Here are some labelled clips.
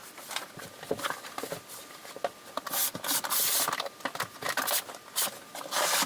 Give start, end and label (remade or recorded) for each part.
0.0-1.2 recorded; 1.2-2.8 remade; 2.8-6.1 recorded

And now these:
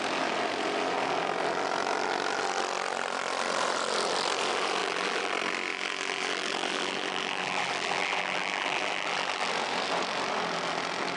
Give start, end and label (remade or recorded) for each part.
0.0-4.8 recorded; 4.8-5.3 remade; 5.3-5.7 recorded; 5.7-9.5 remade; 9.5-11.2 recorded